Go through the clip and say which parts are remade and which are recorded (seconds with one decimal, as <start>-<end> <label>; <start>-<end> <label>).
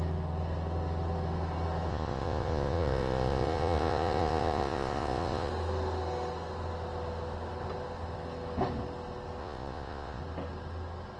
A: 0.0-1.9 recorded; 1.9-5.5 remade; 5.5-9.4 recorded; 9.4-10.2 remade; 10.2-11.2 recorded